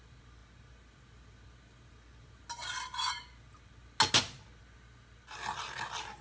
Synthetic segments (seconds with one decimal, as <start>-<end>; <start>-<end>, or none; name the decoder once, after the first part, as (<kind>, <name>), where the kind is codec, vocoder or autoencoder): none